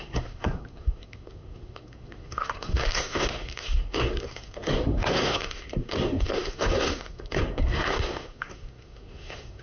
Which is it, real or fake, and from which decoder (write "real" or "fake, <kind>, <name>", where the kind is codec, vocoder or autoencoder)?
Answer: fake, codec, SNAC